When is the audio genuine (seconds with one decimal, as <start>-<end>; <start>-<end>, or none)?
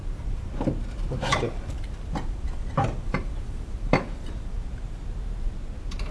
0.5-1.3; 5.0-6.1